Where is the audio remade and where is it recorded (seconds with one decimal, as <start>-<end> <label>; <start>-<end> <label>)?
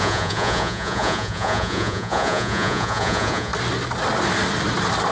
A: 0.0-3.5 remade; 3.5-5.1 recorded